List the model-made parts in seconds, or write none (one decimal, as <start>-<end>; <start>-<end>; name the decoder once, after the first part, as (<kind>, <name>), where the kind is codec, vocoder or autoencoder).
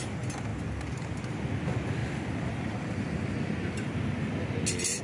none